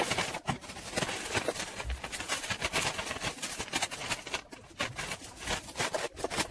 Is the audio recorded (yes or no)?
no